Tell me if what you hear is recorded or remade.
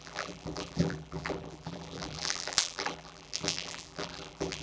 remade